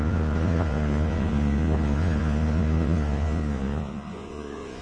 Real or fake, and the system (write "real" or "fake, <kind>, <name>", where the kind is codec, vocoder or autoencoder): fake, vocoder, Vocos